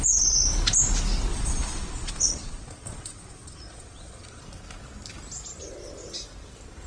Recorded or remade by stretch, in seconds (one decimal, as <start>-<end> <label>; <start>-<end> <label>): 0.0-1.3 recorded; 1.3-4.4 remade; 4.4-6.9 recorded